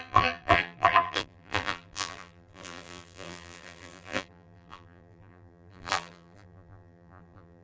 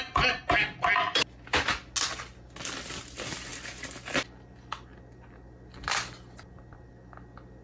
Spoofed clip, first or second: first